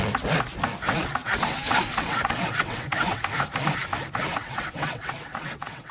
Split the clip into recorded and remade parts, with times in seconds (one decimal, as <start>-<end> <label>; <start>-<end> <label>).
0.0-1.2 recorded; 1.2-3.2 remade; 3.2-4.4 recorded; 4.4-5.9 remade